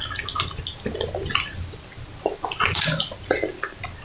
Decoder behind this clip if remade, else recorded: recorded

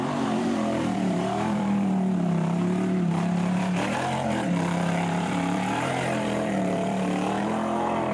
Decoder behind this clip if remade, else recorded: remade, vocoder, BigVGAN v2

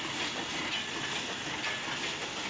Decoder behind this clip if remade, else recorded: recorded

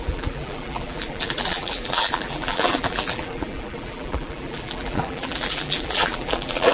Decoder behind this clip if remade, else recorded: remade, vocoder, BigVGAN v2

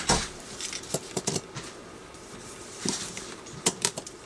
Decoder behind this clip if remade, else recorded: remade, vocoder, BigVGAN v2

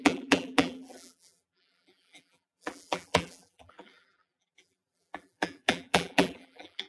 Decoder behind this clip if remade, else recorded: remade, vocoder, BigVGAN v2